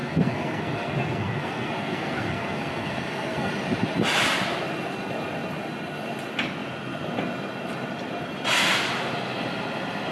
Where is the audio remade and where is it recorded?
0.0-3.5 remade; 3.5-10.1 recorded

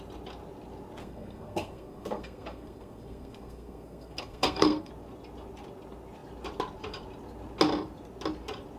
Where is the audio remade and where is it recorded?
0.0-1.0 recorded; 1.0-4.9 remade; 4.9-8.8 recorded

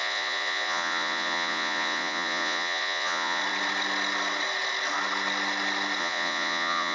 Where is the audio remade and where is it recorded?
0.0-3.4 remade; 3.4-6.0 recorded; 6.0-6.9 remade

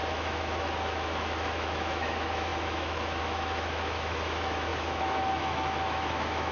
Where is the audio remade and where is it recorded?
0.0-6.5 remade